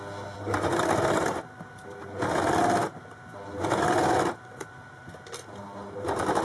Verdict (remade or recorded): recorded